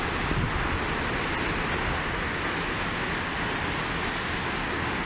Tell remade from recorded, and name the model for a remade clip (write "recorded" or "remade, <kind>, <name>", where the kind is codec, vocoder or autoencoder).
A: recorded